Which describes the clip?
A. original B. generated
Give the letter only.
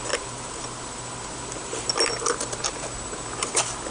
A